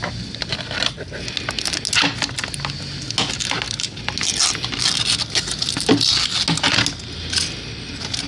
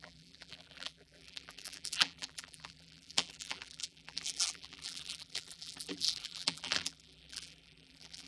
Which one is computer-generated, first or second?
second